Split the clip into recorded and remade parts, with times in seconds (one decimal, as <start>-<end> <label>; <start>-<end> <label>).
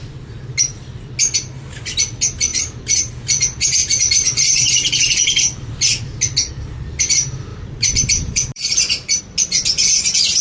0.0-2.5 recorded; 2.5-3.1 remade; 3.1-3.8 recorded; 3.8-5.1 remade; 5.1-7.5 recorded; 7.5-9.2 remade; 9.2-10.4 recorded